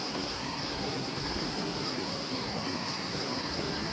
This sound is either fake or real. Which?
fake